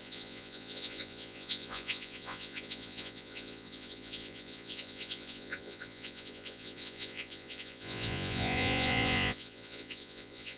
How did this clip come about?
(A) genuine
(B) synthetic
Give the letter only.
B